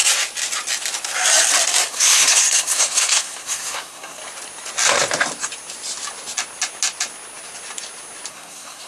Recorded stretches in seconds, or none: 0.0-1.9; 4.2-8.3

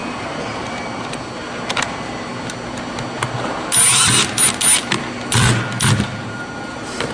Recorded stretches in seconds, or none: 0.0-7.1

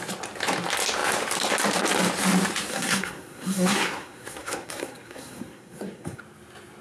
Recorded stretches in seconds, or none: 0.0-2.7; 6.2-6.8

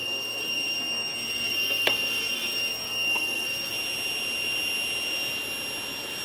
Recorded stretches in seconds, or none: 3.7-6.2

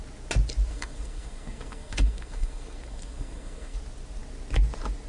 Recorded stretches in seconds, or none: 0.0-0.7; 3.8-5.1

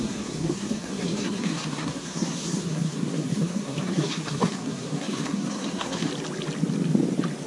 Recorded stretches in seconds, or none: 6.1-7.5

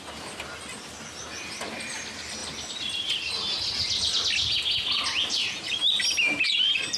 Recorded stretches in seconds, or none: 0.0-7.0